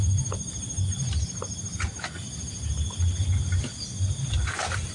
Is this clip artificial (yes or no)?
no